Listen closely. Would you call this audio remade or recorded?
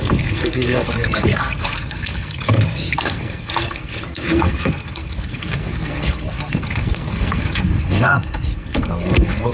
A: remade